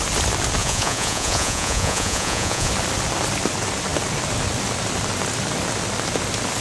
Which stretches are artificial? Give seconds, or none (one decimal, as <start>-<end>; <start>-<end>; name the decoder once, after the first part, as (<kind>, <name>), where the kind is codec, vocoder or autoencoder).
0.6-2.7 (vocoder, Vocos)